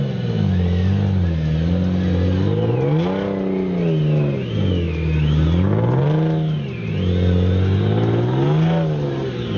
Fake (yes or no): no